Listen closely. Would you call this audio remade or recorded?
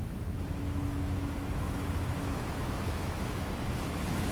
remade